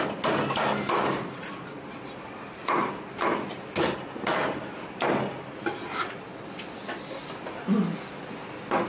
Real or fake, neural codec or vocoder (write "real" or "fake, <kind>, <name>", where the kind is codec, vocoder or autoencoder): real